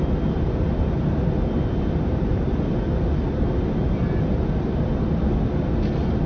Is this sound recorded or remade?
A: recorded